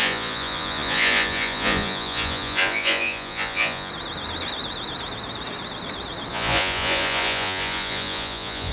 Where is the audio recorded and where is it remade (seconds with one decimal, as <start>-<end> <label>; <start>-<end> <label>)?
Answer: 0.0-3.9 remade; 3.9-6.3 recorded; 6.3-8.7 remade

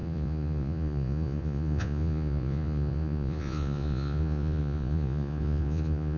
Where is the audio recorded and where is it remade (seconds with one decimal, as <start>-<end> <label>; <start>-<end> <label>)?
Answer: 0.0-6.2 remade

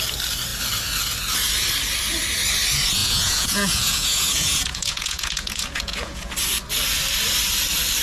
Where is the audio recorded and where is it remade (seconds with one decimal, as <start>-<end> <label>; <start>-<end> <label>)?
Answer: 0.0-3.0 recorded; 3.0-6.3 remade; 6.3-8.0 recorded

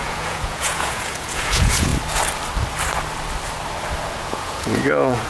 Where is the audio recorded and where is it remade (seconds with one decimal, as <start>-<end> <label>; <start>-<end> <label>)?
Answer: 0.0-1.9 remade; 1.9-4.2 recorded; 4.2-5.3 remade

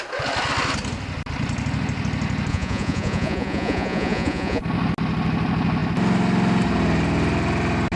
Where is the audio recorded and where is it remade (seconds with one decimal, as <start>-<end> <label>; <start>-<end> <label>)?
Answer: 0.0-2.5 recorded; 2.5-4.6 remade; 4.6-8.0 recorded

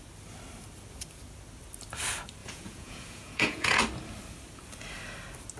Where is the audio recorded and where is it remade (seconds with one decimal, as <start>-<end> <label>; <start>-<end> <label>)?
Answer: 0.0-2.4 recorded; 2.4-3.8 remade; 3.8-5.6 recorded

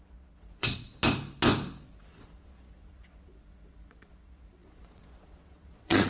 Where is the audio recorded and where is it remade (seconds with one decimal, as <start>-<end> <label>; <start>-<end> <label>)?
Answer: 0.0-0.9 remade; 0.9-1.8 recorded; 1.8-6.1 remade

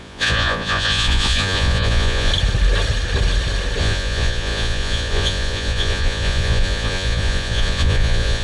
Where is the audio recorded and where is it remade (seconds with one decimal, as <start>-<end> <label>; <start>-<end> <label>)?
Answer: 0.0-2.3 remade; 2.3-3.8 recorded; 3.8-8.4 remade